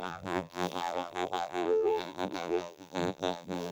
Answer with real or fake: fake